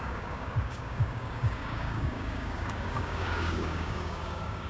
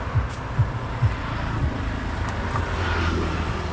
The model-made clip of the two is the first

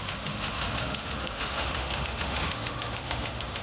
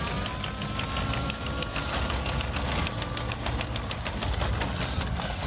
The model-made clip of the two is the first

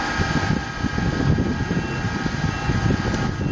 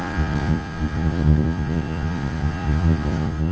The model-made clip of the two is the second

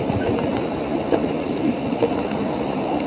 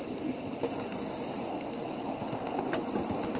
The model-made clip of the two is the first